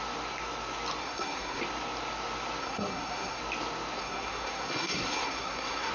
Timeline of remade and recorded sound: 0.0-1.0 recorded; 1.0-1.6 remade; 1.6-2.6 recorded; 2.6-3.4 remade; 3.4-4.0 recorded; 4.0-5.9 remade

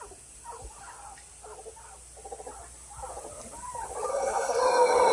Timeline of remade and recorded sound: 0.0-4.1 recorded; 4.1-4.6 remade; 4.6-5.1 recorded

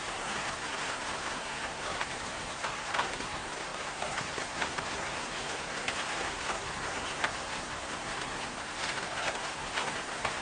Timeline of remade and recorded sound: 0.0-10.4 remade

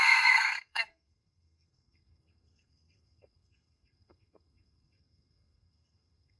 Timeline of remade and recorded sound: 0.0-6.4 remade

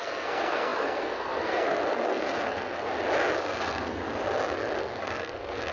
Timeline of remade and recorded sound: 0.0-2.9 remade; 2.9-3.4 recorded; 3.4-4.0 remade; 4.0-4.8 recorded; 4.8-5.7 remade

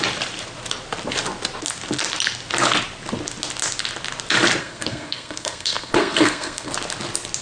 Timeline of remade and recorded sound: 0.0-4.6 recorded; 4.6-6.7 remade; 6.7-7.4 recorded

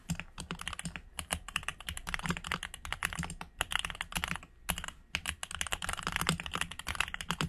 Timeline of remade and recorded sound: 0.0-7.5 recorded